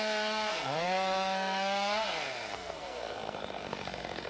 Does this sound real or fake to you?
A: fake